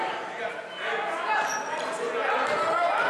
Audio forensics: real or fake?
real